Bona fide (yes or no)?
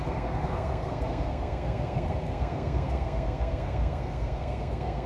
no